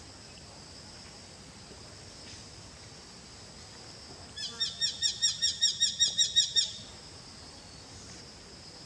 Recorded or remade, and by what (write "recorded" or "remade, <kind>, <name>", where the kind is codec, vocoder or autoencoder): recorded